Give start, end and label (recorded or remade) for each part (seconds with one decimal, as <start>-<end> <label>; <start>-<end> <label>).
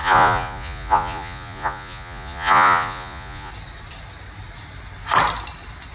0.0-3.5 remade; 3.5-5.9 recorded